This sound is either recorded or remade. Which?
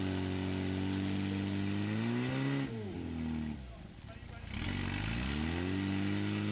recorded